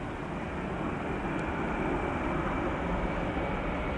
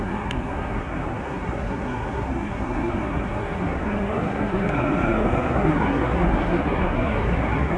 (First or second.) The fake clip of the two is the second